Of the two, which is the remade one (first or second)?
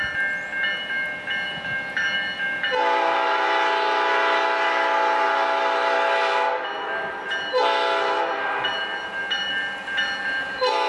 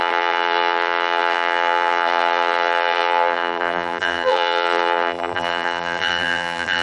second